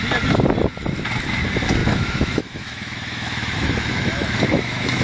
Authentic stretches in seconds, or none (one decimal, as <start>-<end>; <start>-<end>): 0.0-1.8